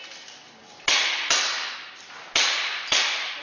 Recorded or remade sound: recorded